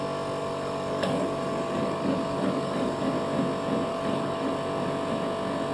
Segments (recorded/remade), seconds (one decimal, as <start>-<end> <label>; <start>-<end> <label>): 0.0-0.4 recorded; 0.4-3.0 remade; 3.0-3.9 recorded; 3.9-4.5 remade; 4.5-5.7 recorded